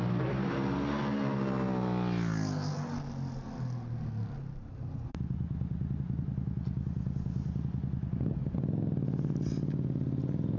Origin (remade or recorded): recorded